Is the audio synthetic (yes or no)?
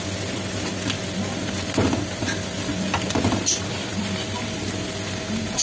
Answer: no